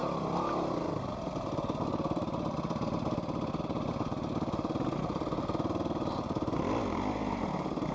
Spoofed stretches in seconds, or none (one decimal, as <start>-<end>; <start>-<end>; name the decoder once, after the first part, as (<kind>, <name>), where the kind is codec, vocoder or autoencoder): none